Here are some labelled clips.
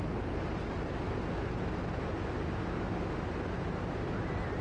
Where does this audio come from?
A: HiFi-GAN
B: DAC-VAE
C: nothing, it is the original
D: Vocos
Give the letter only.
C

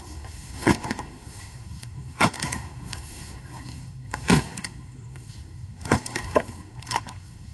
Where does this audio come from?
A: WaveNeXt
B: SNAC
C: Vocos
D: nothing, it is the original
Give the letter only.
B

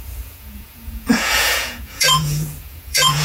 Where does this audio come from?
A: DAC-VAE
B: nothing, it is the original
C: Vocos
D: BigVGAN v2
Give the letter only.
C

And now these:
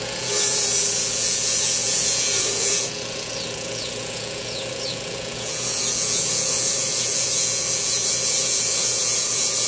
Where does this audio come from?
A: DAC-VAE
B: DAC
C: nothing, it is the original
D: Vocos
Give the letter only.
D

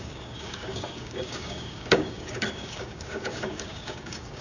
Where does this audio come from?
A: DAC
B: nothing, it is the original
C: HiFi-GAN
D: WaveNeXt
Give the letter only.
A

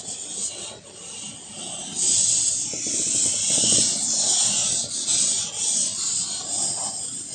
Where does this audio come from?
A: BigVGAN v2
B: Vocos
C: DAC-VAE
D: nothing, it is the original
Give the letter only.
D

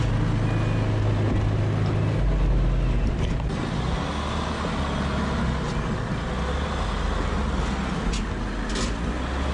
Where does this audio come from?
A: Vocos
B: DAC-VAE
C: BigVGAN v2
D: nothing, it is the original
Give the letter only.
D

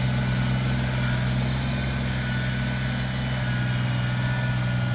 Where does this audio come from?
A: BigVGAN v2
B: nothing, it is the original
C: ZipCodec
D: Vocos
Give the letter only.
B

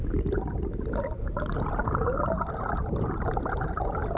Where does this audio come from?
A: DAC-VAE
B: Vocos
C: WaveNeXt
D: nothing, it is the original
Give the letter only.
D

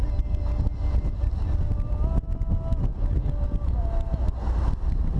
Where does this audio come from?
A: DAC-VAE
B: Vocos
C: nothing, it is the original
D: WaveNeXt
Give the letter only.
C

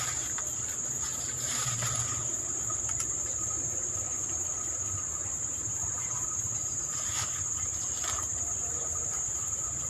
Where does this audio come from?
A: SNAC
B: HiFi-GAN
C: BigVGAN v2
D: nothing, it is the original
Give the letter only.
C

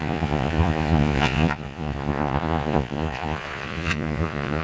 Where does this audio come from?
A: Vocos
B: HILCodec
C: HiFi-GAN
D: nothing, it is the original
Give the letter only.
A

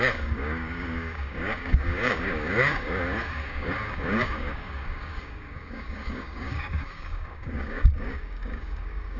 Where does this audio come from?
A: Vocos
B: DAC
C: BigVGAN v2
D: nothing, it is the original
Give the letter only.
B